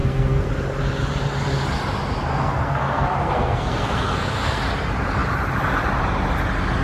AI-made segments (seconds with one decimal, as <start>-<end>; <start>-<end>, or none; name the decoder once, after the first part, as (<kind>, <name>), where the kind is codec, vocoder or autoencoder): 0.0-0.5 (codec, SNAC); 2.3-4.6